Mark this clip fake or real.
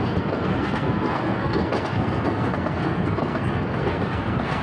fake